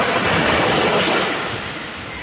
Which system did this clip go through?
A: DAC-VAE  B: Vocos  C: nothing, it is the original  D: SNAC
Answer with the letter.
C